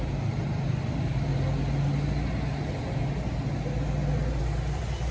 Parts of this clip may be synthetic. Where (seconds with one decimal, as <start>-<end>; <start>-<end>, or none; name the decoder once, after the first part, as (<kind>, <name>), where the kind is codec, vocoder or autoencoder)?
0.0-1.3 (vocoder, BigVGAN v2); 4.4-5.1